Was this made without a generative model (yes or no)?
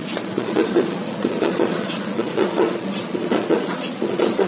no